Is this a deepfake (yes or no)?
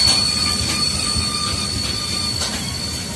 no